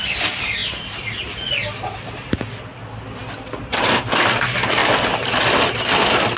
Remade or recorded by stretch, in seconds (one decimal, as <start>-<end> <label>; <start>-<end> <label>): 0.0-4.8 recorded; 4.8-6.4 remade